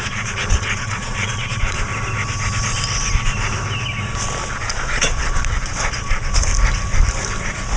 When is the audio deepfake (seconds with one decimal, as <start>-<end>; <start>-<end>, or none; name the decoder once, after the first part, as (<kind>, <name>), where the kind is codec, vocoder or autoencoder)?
0.0-1.9 (vocoder, Vocos); 4.5-6.5